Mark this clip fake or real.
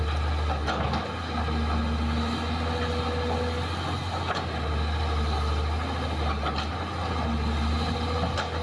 real